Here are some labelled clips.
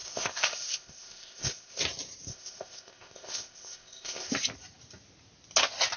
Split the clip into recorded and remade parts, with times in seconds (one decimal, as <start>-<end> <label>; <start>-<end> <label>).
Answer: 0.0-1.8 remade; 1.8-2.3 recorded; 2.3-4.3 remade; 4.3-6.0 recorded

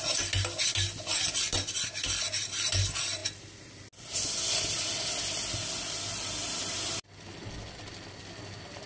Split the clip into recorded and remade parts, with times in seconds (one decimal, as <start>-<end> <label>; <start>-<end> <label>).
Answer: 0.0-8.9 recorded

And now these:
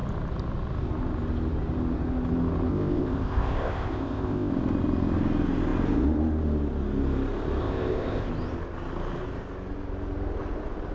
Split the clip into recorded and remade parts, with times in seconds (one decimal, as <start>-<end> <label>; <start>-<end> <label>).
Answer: 0.0-2.7 recorded; 2.7-4.5 remade; 4.5-7.6 recorded; 7.6-8.3 remade; 8.3-10.9 recorded

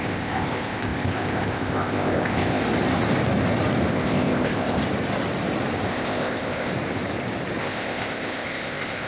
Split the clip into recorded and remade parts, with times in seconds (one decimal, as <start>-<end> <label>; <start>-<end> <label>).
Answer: 0.0-2.6 remade; 2.6-3.9 recorded; 3.9-4.8 remade; 4.8-5.9 recorded; 5.9-6.7 remade; 6.7-7.6 recorded; 7.6-9.1 remade